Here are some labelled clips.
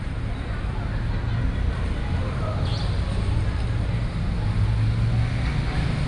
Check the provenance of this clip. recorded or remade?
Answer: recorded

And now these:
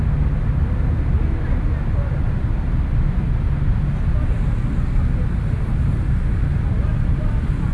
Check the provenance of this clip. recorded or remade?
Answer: recorded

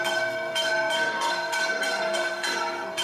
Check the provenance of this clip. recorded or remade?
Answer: remade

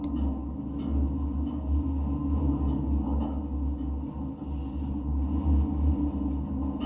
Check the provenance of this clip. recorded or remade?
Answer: recorded